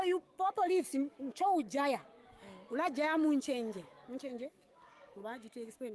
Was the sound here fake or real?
fake